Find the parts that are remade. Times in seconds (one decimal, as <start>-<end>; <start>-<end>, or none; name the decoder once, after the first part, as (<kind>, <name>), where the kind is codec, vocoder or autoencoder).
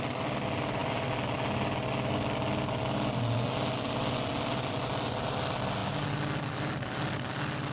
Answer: none